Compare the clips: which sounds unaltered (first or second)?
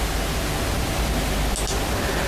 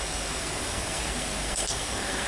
first